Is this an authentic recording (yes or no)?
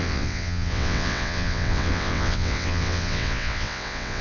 no